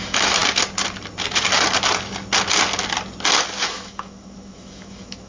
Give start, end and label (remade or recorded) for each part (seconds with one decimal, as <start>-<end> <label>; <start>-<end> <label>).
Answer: 0.0-0.4 remade; 0.4-3.6 recorded; 3.6-5.3 remade